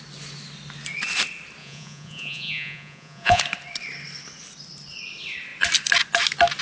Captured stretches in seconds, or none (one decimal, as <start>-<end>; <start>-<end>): 0.0-1.6; 3.4-6.6